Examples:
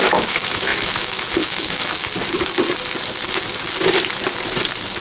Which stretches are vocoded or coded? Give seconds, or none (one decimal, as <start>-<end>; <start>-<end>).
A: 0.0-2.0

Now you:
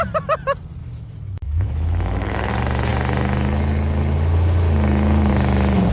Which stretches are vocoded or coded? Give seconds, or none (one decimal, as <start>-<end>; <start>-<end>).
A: 0.8-2.5

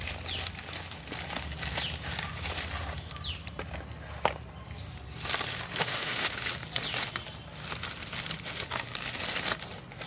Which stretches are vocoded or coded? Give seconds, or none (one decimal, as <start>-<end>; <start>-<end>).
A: 5.8-6.4

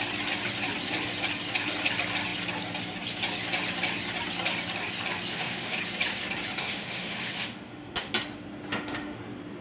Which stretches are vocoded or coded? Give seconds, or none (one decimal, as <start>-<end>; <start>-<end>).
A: 5.3-5.8; 6.6-8.1; 8.7-9.2

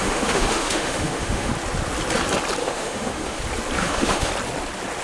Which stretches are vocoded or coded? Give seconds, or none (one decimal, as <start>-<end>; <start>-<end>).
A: 0.0-1.5; 2.6-3.4; 3.8-4.3

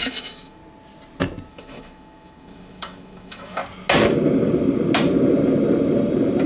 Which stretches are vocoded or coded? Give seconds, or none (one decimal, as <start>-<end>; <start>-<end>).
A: 0.0-0.6; 1.5-3.6

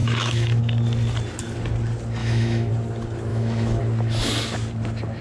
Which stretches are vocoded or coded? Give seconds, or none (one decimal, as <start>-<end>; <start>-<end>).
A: 0.0-0.6; 2.2-2.7; 3.3-3.8